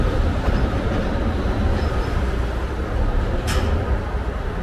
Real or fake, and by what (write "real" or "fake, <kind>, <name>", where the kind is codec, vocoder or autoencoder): fake, vocoder, BigVGAN v2